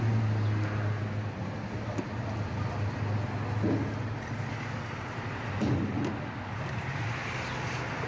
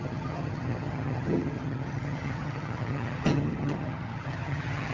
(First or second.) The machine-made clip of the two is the second